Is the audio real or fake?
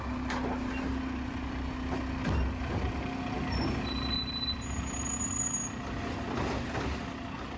real